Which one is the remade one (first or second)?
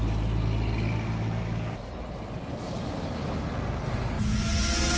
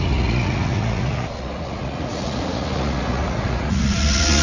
second